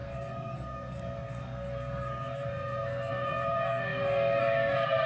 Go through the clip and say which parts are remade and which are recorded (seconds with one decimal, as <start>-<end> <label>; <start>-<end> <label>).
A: 0.0-5.1 remade